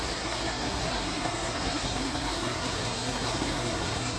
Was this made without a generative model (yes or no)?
no